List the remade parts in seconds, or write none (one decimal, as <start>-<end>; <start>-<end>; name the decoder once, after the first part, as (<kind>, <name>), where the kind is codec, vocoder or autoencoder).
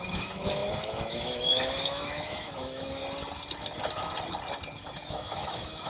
0.0-3.0 (autoencoder, DAC-VAE); 4.8-5.9